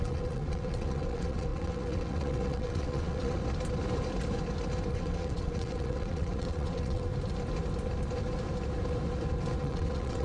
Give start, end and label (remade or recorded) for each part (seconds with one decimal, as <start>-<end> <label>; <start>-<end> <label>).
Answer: 0.0-3.4 remade; 3.4-4.9 recorded; 4.9-7.1 remade; 7.1-9.6 recorded; 9.6-10.2 remade